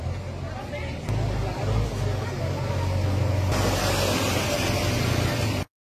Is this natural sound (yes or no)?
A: yes